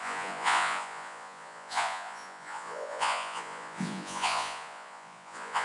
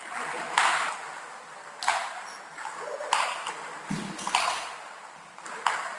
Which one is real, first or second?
second